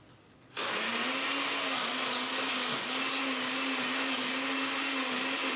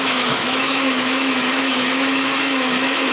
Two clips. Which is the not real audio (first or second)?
second